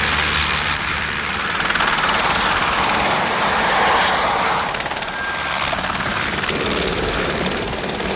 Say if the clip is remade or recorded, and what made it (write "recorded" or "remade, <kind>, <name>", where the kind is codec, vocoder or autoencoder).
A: recorded